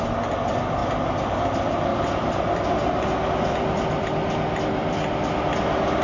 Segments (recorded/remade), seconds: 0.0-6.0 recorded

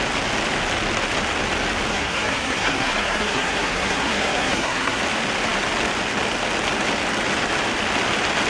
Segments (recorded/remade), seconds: 0.0-1.9 recorded; 1.9-5.0 remade; 5.0-8.5 recorded

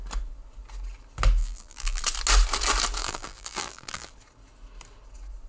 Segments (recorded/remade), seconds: 0.0-1.4 recorded; 1.4-2.0 remade; 2.0-3.0 recorded; 3.0-4.1 remade; 4.1-5.5 recorded

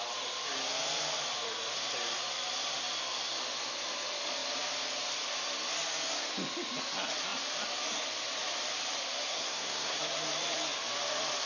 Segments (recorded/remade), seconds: 0.0-9.3 recorded; 9.3-10.0 remade; 10.0-11.5 recorded

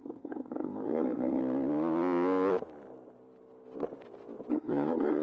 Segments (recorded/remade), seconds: 0.0-1.4 remade; 1.4-4.5 recorded; 4.5-5.2 remade